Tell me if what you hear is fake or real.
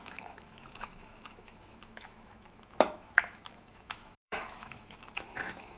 fake